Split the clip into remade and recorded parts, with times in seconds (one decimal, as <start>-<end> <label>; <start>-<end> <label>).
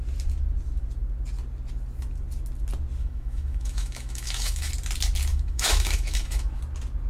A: 0.0-3.0 recorded; 3.0-4.7 remade; 4.7-5.3 recorded; 5.3-6.6 remade; 6.6-7.1 recorded